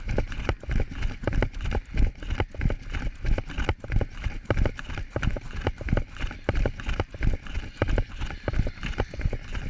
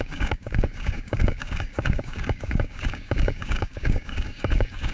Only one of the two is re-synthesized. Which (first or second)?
second